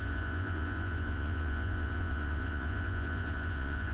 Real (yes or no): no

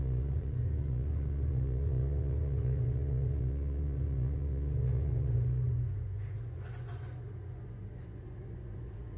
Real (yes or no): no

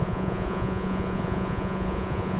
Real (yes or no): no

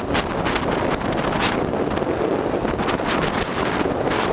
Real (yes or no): yes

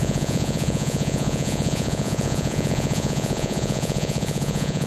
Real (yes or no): no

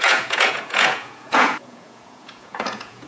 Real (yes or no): no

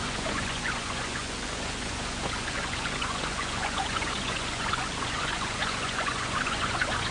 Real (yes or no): no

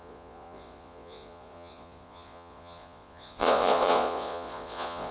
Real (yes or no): no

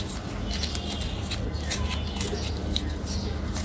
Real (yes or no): yes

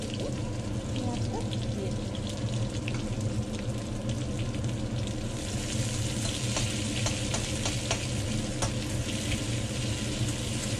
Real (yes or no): yes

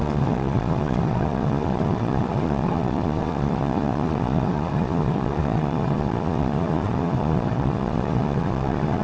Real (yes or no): no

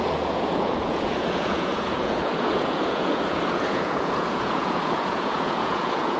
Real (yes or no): no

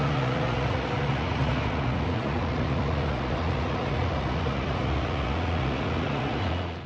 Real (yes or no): no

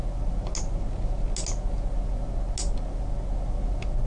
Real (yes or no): yes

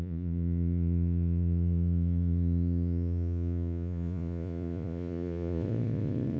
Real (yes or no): no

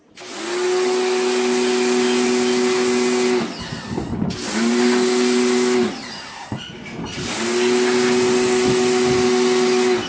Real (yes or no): yes